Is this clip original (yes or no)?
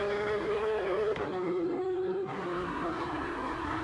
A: no